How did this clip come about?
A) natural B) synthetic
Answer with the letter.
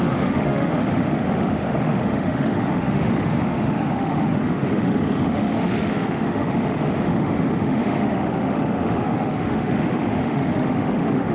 B